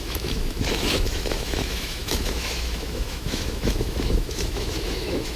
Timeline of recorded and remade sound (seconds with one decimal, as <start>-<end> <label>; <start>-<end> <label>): 0.0-5.4 remade